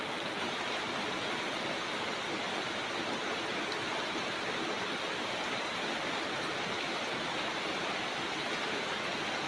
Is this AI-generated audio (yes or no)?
no